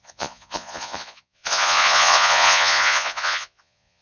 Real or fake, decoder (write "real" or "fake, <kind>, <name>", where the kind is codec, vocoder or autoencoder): fake, vocoder, Vocos